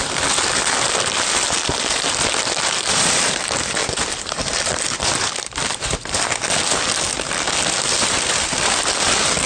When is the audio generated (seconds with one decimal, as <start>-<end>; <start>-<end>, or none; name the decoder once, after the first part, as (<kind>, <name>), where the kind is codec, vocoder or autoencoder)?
3.8-5.8 (vocoder, BigVGAN v2)